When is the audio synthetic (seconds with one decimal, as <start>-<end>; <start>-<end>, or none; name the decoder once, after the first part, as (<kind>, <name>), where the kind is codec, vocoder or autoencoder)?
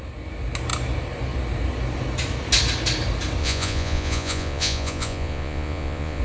3.4-6.2 (vocoder, Vocos)